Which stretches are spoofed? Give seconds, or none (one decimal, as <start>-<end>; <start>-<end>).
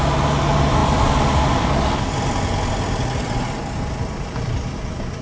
none